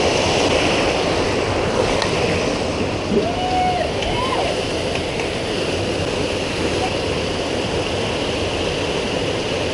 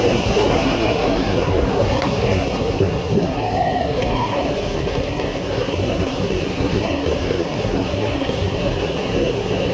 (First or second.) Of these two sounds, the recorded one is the first